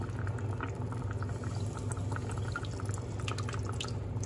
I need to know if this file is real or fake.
real